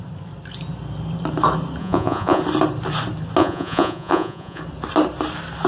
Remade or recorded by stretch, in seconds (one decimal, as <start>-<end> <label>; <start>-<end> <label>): 0.0-1.8 recorded; 1.8-2.4 remade; 2.4-3.4 recorded; 3.4-4.6 remade; 4.6-5.7 recorded